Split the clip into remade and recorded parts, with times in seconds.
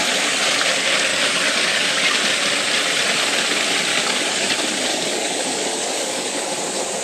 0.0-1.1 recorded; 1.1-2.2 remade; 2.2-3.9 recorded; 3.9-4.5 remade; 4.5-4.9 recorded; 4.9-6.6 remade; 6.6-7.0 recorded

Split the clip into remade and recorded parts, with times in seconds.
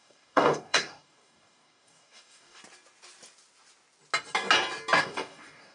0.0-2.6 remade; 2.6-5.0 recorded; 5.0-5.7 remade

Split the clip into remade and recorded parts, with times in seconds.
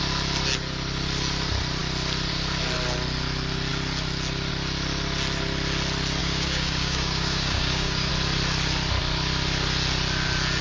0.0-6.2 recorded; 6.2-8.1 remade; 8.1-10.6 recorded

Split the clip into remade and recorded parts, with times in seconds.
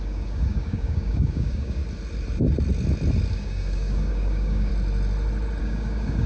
0.0-1.8 remade; 1.8-3.3 recorded; 3.3-4.7 remade; 4.7-5.6 recorded; 5.6-6.3 remade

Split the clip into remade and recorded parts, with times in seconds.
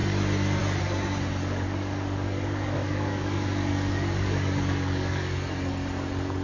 0.0-1.4 recorded; 1.4-5.2 remade; 5.2-6.4 recorded